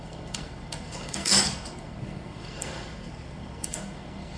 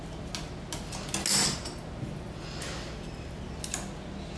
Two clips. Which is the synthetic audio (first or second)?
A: first